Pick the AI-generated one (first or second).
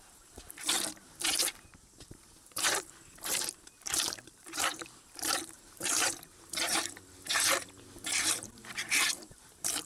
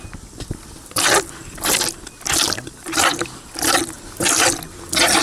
first